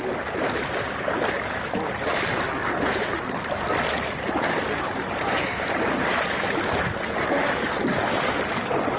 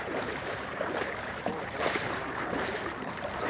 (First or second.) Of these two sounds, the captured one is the first